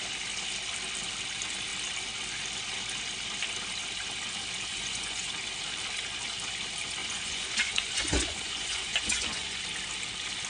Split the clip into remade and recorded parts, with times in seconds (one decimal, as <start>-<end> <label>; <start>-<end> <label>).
0.0-4.7 recorded; 4.7-5.3 remade; 5.3-7.0 recorded; 7.0-9.6 remade; 9.6-10.5 recorded